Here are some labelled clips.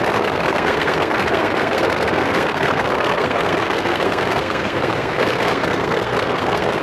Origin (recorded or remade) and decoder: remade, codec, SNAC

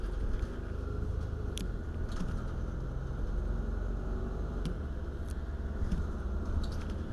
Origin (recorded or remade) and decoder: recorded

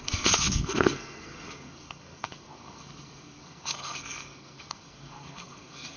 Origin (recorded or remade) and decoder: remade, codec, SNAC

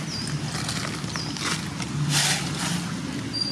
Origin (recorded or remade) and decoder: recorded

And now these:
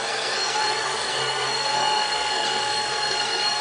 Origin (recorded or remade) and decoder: remade, codec, SNAC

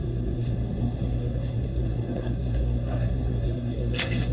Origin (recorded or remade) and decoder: remade, codec, SNAC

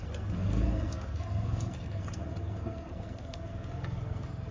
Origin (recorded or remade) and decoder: remade, codec, SNAC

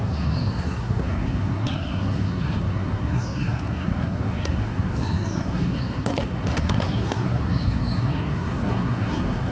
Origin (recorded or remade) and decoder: remade, codec, SNAC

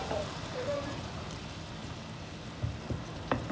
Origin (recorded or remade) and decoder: recorded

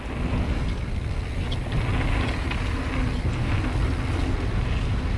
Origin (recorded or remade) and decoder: recorded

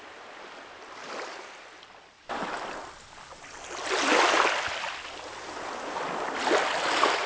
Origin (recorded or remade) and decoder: recorded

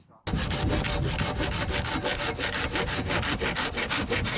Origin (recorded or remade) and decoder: recorded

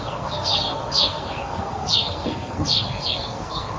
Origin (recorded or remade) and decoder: remade, codec, SNAC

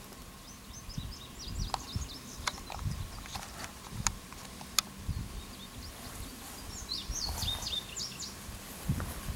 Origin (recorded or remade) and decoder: recorded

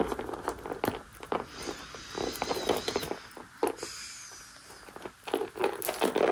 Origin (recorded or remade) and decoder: recorded